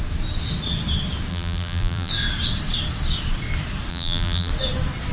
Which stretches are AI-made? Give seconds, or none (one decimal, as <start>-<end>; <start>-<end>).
1.3-2.1; 3.9-4.5